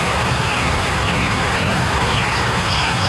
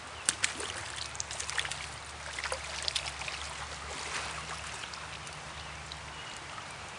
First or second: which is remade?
first